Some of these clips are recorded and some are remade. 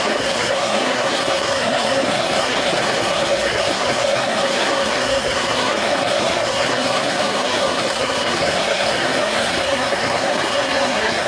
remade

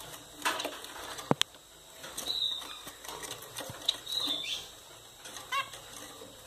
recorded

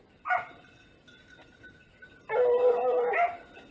recorded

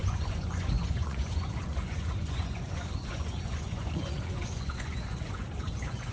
remade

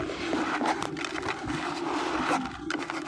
recorded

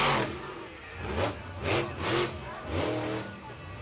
recorded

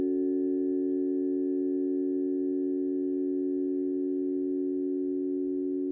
recorded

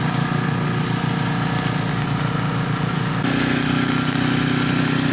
recorded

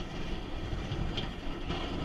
recorded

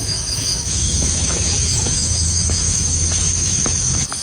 remade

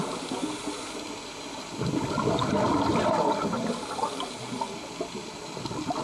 recorded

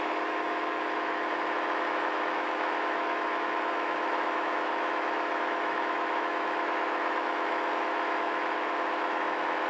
remade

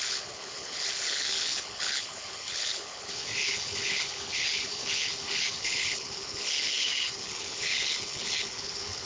remade